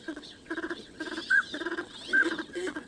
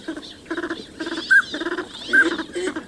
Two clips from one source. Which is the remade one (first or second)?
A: first